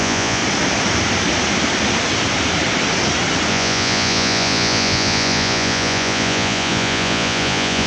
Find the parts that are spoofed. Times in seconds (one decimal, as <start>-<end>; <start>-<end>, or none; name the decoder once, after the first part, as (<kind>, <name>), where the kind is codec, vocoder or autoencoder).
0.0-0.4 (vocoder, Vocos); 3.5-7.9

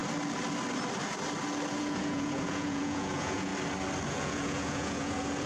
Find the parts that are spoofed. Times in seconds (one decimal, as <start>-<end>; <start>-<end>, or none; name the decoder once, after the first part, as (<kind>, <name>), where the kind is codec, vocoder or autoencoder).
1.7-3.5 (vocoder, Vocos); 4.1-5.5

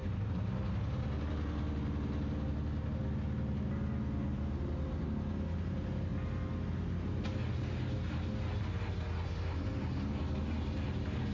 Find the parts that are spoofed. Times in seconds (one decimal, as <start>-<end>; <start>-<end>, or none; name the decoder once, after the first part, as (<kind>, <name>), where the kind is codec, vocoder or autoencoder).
none

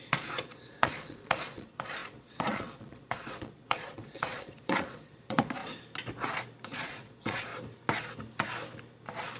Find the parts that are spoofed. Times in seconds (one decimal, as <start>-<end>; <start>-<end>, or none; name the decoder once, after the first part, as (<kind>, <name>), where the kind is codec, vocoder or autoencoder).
0.0-5.6 (vocoder, Vocos); 6.6-7.5

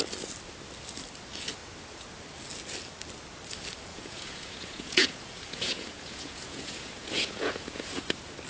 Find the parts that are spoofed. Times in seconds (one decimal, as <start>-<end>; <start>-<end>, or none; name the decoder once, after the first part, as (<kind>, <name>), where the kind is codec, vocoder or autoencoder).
3.9-8.1 (vocoder, Vocos)